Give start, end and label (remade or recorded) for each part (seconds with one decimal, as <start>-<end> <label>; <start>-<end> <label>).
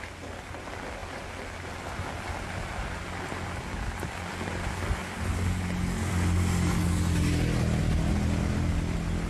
0.0-9.3 recorded